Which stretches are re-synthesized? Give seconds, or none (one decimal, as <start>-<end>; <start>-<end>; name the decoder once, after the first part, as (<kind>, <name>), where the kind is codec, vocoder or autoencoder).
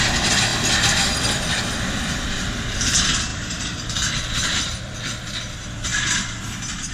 0.0-0.5 (vocoder, BigVGAN v2); 1.6-5.9